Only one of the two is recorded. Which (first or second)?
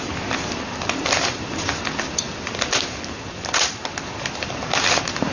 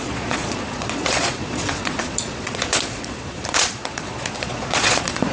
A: first